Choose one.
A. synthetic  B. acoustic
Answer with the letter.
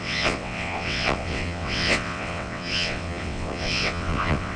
A